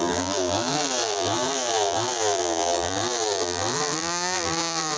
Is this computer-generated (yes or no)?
yes